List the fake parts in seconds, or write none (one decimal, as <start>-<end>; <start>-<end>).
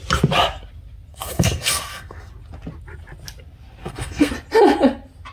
1.1-2.3; 3.8-4.3